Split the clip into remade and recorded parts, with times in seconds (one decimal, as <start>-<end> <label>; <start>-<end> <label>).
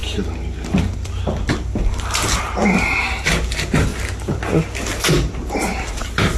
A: 0.0-1.7 recorded; 1.7-3.9 remade; 3.9-5.4 recorded; 5.4-6.4 remade